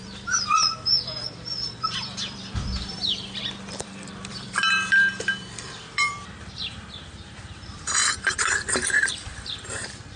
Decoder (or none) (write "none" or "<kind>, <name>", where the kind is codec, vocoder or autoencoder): vocoder, BigVGAN v2